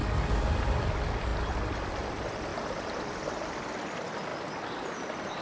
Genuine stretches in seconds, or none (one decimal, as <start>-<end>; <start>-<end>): 0.0-2.5; 3.8-4.3